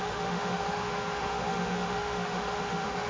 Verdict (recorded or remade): remade